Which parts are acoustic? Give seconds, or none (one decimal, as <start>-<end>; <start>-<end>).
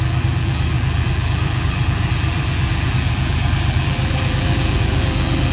none